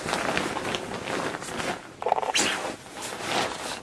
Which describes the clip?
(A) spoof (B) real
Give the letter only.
B